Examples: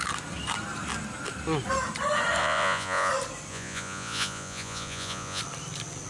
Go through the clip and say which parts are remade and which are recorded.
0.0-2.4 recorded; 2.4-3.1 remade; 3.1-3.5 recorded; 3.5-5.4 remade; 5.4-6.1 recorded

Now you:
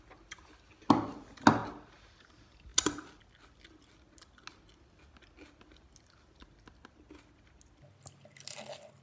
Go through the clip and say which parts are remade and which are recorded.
0.0-9.0 recorded

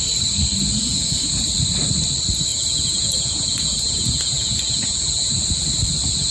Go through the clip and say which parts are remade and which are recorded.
0.0-0.8 recorded; 0.8-1.4 remade; 1.4-2.5 recorded; 2.5-5.4 remade; 5.4-6.3 recorded

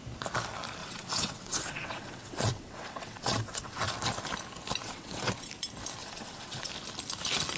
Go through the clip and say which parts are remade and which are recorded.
0.0-0.8 recorded; 0.8-3.9 remade; 3.9-4.8 recorded; 4.8-5.5 remade; 5.5-6.0 recorded; 6.0-6.7 remade; 6.7-7.6 recorded